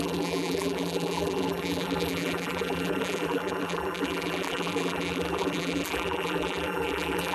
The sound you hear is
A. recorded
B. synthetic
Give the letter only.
B